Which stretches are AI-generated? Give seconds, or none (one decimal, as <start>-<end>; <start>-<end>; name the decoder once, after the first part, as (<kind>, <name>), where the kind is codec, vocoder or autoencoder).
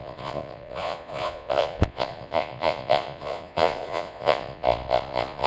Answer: 0.0-5.5 (vocoder, Vocos)